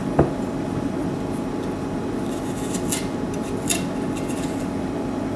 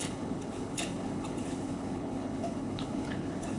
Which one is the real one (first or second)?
first